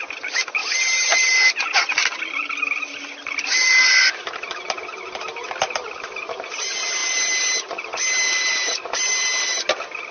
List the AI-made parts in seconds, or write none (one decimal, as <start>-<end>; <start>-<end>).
none